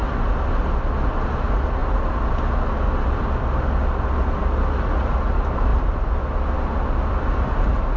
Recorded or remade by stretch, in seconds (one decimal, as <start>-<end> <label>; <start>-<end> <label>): 0.0-8.0 recorded